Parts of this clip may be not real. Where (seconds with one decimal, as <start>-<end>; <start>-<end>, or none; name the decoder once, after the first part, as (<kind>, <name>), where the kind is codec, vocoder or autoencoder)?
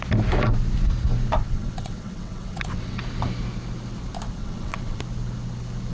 1.4-3.0 (vocoder, WaveNeXt); 4.4-5.0